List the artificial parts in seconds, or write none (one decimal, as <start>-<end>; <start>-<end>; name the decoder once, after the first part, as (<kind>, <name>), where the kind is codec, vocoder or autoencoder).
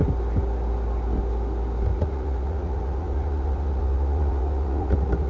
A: 1.9-5.3 (vocoder, Vocos)